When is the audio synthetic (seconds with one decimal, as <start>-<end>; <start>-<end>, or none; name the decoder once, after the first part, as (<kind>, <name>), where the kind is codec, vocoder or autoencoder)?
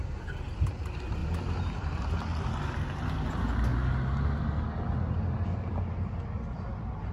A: none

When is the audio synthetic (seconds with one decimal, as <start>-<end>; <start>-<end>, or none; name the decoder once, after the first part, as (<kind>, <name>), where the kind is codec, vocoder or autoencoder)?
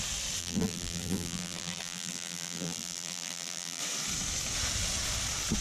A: 0.4-3.8 (vocoder, BigVGAN v2)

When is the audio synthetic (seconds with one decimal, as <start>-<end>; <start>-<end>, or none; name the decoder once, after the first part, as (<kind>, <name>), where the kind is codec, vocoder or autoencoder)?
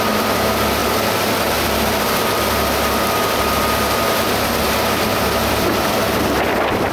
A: 0.8-2.0 (vocoder, BigVGAN v2)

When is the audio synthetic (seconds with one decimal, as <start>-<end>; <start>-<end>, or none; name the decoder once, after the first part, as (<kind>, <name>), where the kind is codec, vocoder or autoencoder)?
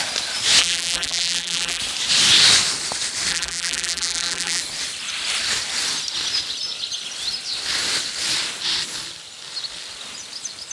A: 0.6-1.8 (vocoder, BigVGAN v2); 3.3-4.6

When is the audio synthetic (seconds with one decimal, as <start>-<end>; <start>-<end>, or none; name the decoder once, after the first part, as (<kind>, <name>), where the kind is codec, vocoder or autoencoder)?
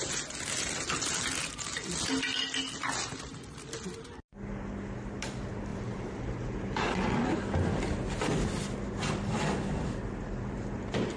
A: 5.7-7.1 (vocoder, BigVGAN v2)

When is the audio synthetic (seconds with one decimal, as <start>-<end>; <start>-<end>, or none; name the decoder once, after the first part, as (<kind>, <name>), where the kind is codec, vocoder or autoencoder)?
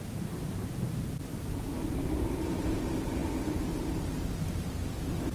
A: 0.0-5.3 (vocoder, BigVGAN v2)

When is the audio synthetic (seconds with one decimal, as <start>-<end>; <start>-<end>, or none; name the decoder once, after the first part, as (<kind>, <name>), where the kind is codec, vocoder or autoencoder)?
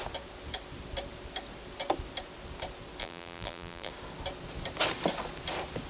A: 3.0-3.9 (vocoder, BigVGAN v2)